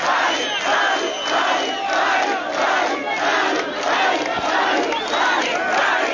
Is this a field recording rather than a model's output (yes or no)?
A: yes